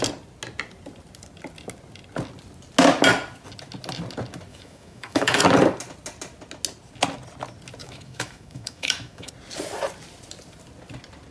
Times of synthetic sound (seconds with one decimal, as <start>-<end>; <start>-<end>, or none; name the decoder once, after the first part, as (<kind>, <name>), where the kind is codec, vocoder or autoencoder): 4.5-5.4 (autoencoder, DAC-VAE); 7.8-9.3